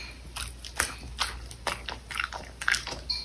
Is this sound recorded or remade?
recorded